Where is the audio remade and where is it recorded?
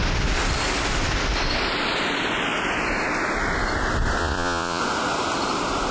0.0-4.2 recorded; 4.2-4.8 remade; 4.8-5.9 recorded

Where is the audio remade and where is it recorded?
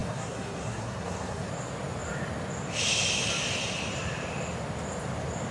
0.0-1.5 remade; 1.5-5.5 recorded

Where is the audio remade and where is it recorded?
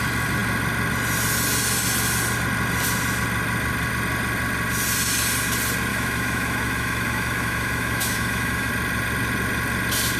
0.0-5.9 recorded; 5.9-8.7 remade; 8.7-10.2 recorded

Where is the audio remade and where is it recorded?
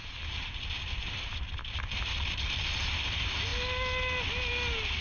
0.0-1.7 remade; 1.7-5.0 recorded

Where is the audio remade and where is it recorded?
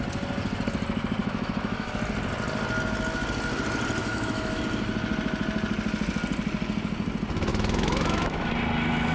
0.0-1.2 recorded; 1.2-2.0 remade; 2.0-4.0 recorded; 4.0-4.6 remade; 4.6-7.5 recorded; 7.5-8.5 remade; 8.5-9.1 recorded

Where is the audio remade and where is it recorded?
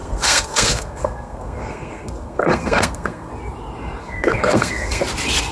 0.0-3.3 remade; 3.3-4.0 recorded; 4.0-5.0 remade; 5.0-5.5 recorded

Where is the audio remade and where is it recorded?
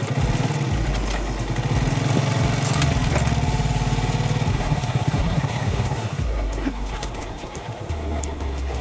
0.0-4.5 recorded; 4.5-8.8 remade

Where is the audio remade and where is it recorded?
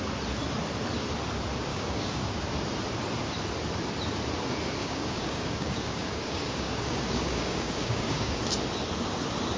0.0-1.7 recorded; 1.7-2.4 remade; 2.4-4.8 recorded; 4.8-8.4 remade; 8.4-9.6 recorded